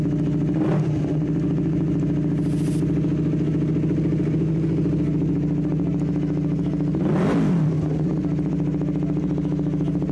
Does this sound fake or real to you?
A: real